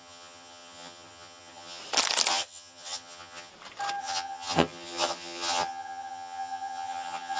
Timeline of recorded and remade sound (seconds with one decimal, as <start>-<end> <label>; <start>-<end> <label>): 0.0-1.8 remade; 1.8-2.3 recorded; 2.3-3.5 remade; 3.5-4.0 recorded; 4.0-7.4 remade